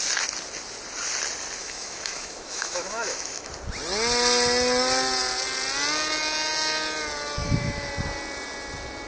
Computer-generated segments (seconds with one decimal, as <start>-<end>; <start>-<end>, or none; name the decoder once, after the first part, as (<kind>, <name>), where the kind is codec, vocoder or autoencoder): 1.6-3.5 (autoencoder, DAC-VAE); 7.4-7.9